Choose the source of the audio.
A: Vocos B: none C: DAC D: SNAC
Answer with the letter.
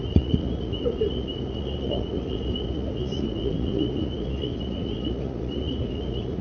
A